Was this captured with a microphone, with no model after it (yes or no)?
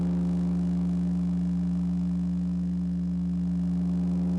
yes